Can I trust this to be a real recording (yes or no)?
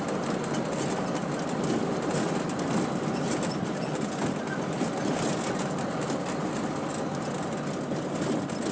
yes